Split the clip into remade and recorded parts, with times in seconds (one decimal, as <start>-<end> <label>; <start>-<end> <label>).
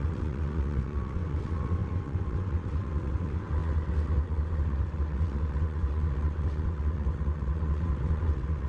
0.0-8.7 remade